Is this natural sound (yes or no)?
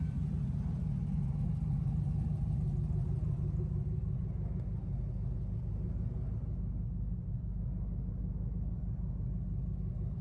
yes